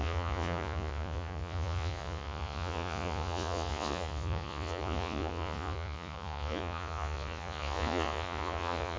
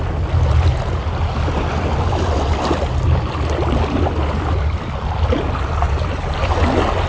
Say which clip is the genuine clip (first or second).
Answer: second